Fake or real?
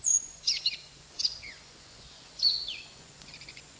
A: fake